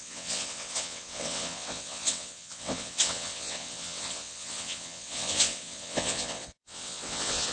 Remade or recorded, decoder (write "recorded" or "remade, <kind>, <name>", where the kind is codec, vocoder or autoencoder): remade, vocoder, WaveNeXt